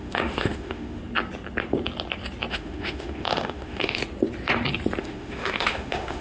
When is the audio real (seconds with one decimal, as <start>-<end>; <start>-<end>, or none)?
1.0-2.5; 4.0-5.0